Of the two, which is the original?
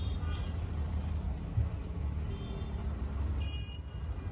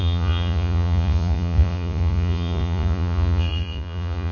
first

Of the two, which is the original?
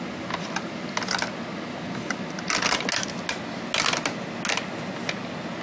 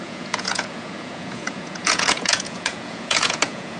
first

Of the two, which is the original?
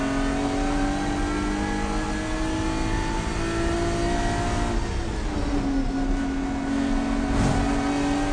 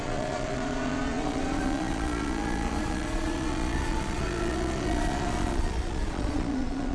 first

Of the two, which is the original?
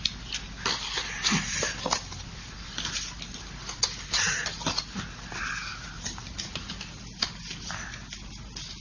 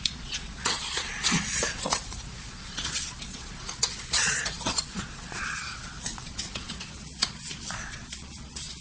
first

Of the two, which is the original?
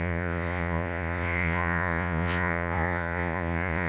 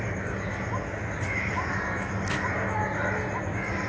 second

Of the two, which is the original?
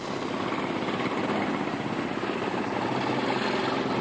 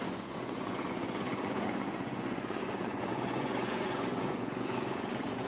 first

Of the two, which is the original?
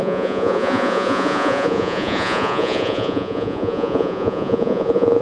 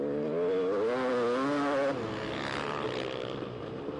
second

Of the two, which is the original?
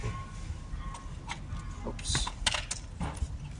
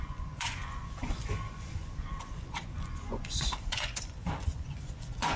first